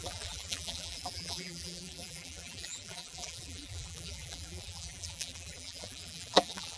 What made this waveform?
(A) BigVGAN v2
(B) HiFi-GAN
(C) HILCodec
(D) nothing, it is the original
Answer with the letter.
A